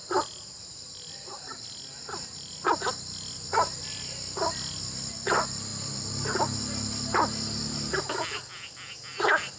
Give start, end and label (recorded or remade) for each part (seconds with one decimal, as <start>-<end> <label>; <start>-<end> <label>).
0.0-9.6 recorded